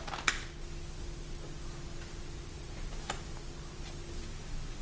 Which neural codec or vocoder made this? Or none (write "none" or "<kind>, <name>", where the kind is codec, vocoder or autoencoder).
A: none